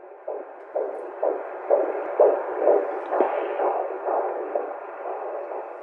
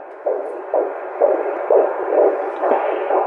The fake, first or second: second